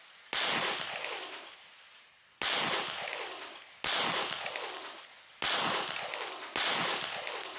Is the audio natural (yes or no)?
yes